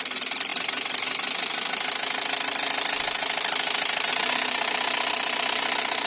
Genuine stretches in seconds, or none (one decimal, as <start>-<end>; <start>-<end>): 0.0-6.1